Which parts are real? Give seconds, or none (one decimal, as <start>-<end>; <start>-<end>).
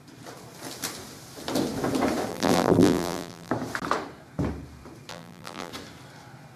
0.0-2.3; 3.5-5.1; 5.7-6.6